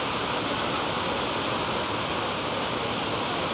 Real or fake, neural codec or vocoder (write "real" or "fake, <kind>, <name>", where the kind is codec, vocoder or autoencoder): real